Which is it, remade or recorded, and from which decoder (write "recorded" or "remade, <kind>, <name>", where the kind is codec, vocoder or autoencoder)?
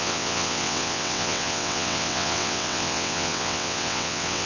remade, vocoder, WaveNeXt